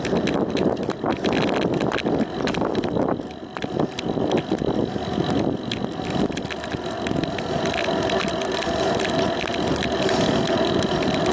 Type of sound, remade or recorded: recorded